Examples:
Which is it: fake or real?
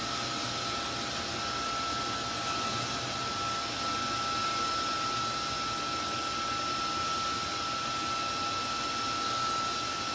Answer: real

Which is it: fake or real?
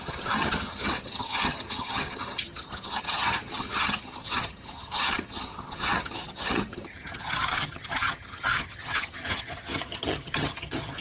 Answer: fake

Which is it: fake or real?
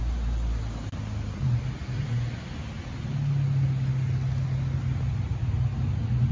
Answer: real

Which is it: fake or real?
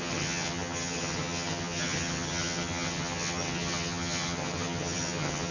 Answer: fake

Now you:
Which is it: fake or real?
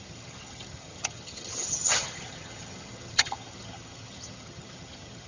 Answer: fake